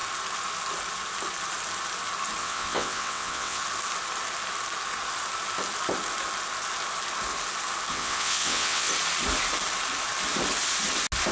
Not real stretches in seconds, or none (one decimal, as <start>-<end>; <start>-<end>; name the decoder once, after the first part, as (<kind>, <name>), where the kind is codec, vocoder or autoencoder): 2.4-3.6 (vocoder, WaveNeXt); 7.9-8.9